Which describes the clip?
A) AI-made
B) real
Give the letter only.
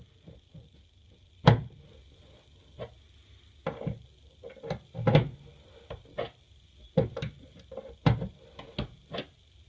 B